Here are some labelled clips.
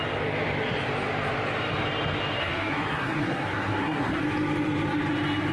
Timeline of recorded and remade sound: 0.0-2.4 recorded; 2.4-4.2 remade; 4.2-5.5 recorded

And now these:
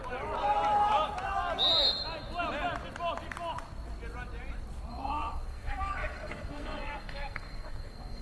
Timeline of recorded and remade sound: 0.0-4.9 recorded; 4.9-8.2 remade

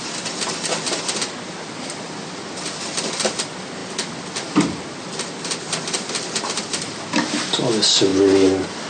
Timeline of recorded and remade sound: 0.0-8.9 recorded

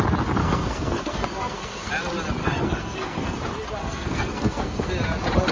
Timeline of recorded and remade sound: 0.0-0.4 recorded; 0.4-1.9 remade; 1.9-2.4 recorded; 2.4-3.4 remade; 3.4-3.8 recorded; 3.8-4.9 remade; 4.9-5.5 recorded

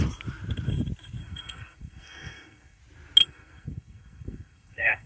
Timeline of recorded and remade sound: 0.0-1.2 recorded; 1.2-2.8 remade; 2.8-3.2 recorded; 3.2-5.1 remade

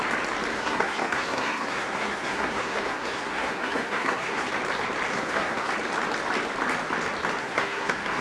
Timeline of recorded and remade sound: 0.0-0.5 recorded; 0.5-4.5 remade; 4.5-5.1 recorded; 5.1-5.7 remade; 5.7-7.4 recorded; 7.4-8.2 remade

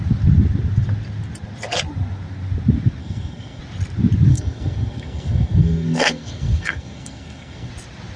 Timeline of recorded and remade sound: 0.0-3.0 recorded; 3.0-3.6 remade; 3.6-4.3 recorded; 4.3-7.7 remade; 7.7-8.2 recorded

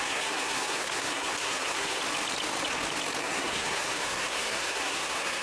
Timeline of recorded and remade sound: 0.0-2.0 remade; 2.0-3.2 recorded; 3.2-5.4 remade